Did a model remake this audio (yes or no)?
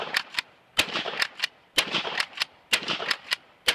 no